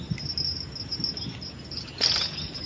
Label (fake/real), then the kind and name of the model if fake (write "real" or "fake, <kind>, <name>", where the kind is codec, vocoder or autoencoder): real